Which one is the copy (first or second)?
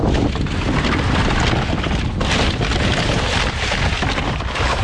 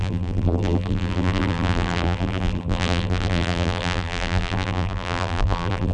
second